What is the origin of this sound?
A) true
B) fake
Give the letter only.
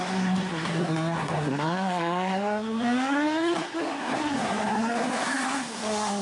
B